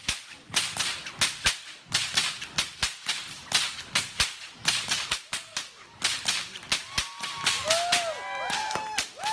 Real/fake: real